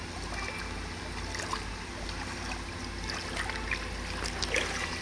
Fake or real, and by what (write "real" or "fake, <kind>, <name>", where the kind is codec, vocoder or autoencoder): real